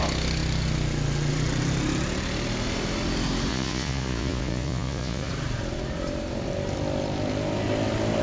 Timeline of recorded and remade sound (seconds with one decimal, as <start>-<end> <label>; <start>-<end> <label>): 0.0-3.5 recorded; 3.5-5.3 remade; 5.3-8.2 recorded